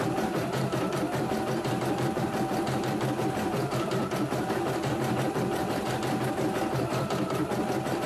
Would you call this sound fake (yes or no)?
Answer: yes